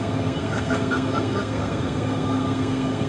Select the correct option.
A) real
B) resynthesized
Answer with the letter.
B